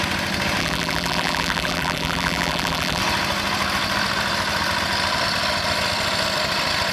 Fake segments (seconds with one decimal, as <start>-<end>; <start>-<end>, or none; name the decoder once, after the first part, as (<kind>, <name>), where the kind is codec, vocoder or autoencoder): 0.6-3.0 (vocoder, BigVGAN v2)